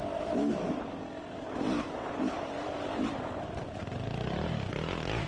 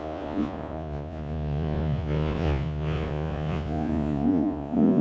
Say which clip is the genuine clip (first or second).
first